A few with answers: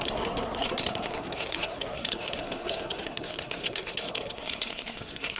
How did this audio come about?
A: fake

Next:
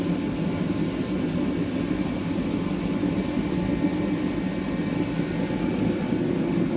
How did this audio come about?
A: real